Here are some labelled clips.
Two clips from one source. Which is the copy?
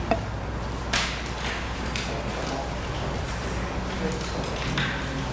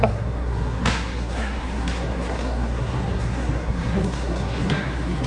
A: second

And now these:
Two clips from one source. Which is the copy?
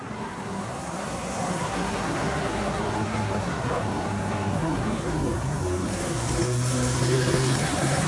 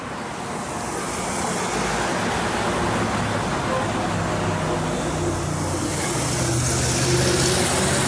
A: first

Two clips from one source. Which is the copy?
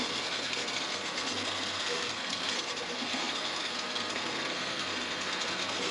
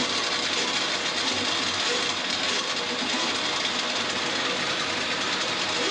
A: first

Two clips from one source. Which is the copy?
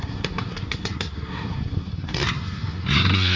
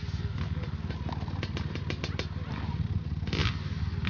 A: first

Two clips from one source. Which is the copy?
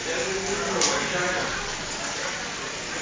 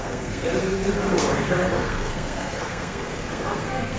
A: second